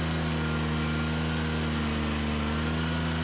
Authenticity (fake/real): real